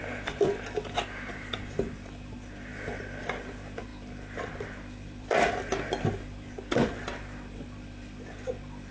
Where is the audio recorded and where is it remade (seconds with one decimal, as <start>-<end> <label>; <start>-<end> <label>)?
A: 0.0-3.9 recorded; 3.9-5.5 remade; 5.5-8.9 recorded